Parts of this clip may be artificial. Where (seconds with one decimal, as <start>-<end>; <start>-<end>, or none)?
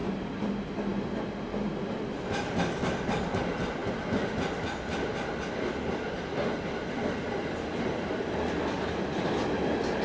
0.0-0.5